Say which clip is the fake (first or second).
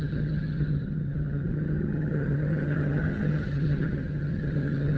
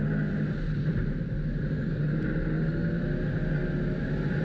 first